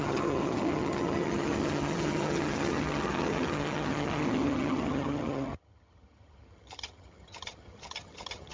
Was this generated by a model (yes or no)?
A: yes